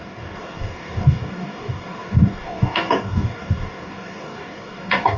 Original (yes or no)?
no